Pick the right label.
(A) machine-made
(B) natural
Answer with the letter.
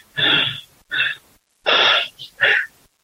B